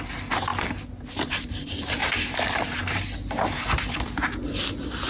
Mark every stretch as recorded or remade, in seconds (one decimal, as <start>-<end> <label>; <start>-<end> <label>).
0.0-5.1 recorded